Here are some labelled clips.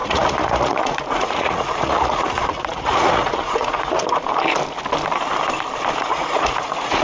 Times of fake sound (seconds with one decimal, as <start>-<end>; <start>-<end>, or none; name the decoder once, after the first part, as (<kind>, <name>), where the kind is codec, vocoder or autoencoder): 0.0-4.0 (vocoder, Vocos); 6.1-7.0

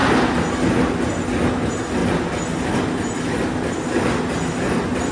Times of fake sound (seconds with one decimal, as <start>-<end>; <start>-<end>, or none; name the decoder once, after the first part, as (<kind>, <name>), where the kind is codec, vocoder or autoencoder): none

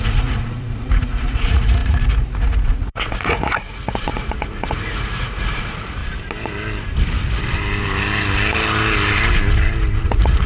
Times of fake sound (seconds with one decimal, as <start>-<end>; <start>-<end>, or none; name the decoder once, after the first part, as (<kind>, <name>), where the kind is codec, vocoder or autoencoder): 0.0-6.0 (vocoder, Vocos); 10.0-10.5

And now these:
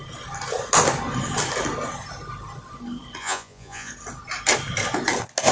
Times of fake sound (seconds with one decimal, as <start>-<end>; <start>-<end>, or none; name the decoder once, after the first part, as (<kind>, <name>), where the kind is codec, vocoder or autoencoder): 3.2-3.9 (vocoder, Vocos)

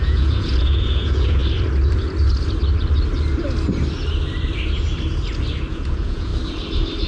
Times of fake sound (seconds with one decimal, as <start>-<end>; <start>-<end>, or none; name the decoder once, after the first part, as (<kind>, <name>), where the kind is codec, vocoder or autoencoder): 0.0-1.4 (vocoder, Vocos); 5.7-6.3

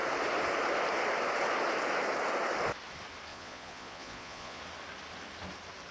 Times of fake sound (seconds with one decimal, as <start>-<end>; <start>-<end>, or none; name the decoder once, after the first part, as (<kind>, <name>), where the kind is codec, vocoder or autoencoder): 3.3-4.6 (vocoder, Vocos)

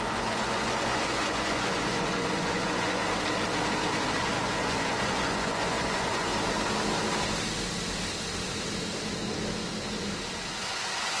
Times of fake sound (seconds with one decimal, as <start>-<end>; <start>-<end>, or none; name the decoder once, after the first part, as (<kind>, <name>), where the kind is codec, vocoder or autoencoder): 0.0-3.0 (vocoder, Vocos); 4.2-6.3; 10.6-11.2